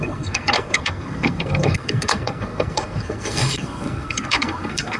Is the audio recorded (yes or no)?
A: no